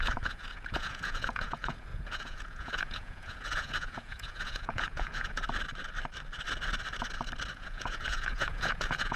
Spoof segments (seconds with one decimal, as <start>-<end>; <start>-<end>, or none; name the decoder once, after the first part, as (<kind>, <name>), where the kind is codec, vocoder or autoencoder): 0.0-5.4 (vocoder, Vocos); 7.5-9.2